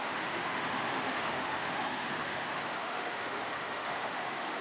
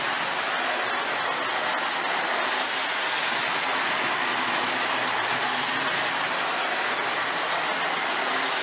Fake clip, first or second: first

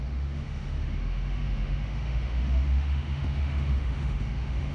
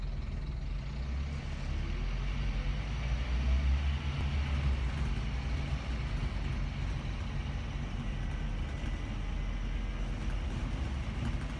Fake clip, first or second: first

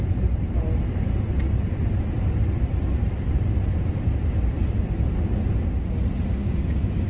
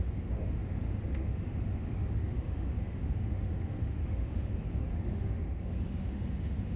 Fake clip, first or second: second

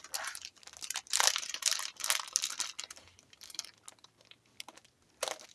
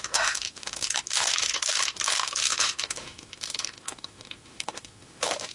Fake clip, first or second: second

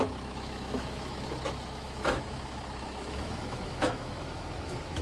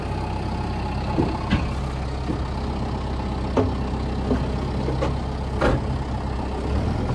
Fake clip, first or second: first